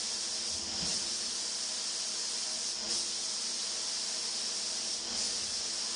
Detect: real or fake real